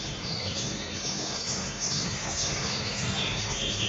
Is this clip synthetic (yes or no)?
yes